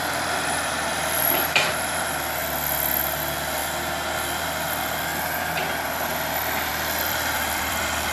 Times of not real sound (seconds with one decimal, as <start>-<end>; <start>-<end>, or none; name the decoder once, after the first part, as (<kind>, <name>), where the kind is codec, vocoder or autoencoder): 0.0-2.4 (vocoder, BigVGAN v2); 3.0-3.6; 4.4-8.1